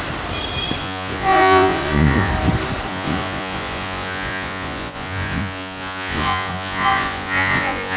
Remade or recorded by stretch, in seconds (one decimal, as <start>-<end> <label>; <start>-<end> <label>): 0.0-0.8 recorded; 0.8-2.3 remade; 2.3-2.9 recorded; 2.9-8.0 remade